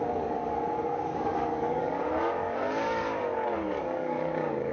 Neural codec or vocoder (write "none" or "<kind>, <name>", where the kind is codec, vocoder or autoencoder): codec, DAC